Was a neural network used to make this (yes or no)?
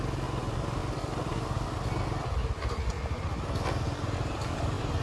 no